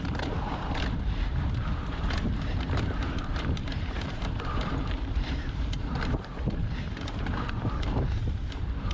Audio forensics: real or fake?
fake